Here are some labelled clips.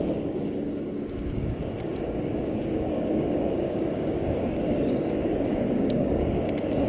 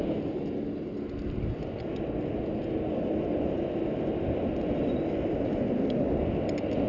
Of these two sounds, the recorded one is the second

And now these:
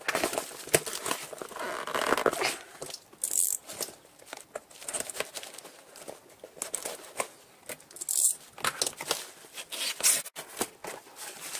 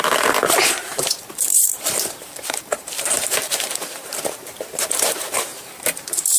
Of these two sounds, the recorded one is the first